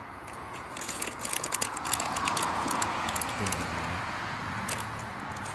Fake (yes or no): yes